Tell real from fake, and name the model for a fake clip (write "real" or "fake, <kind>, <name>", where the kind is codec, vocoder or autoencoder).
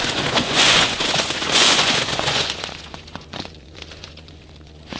fake, vocoder, Vocos